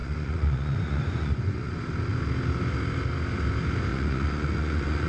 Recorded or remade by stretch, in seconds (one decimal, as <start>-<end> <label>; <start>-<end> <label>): 0.0-1.7 remade; 1.7-3.9 recorded; 3.9-5.1 remade